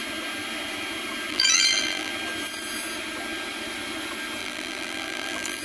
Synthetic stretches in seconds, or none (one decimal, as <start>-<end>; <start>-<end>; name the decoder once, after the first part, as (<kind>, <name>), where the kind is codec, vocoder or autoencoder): 1.3-2.1 (vocoder, BigVGAN v2); 4.4-5.6